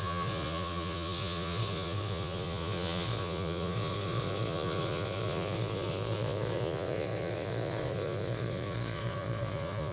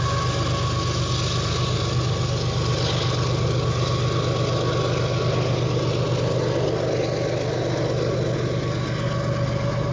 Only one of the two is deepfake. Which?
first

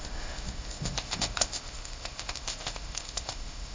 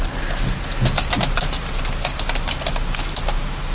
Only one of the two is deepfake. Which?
first